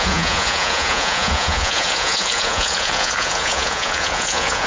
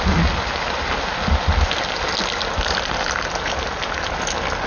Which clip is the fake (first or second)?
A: first